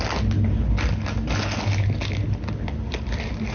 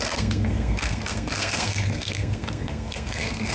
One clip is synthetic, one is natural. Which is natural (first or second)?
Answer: first